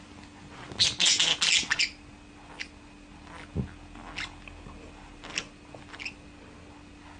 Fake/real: real